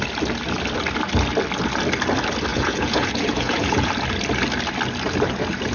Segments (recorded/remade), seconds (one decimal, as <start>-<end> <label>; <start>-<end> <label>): 0.0-2.5 recorded; 2.5-3.9 remade; 3.9-5.7 recorded